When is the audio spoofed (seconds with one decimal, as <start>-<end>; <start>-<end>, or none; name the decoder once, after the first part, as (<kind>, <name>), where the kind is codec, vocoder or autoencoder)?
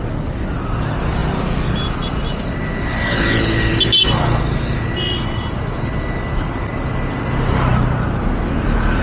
none